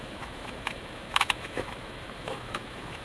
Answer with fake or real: fake